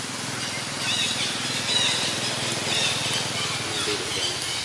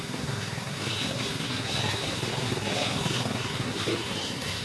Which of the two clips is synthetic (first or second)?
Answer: second